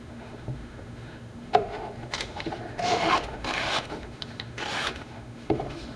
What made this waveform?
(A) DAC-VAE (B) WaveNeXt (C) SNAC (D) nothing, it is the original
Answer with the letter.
A